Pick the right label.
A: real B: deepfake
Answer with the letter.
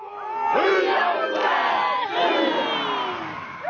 A